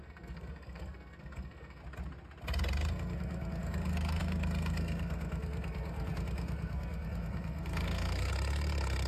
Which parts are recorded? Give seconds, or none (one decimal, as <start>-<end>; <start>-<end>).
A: 1.8-2.9; 8.3-9.1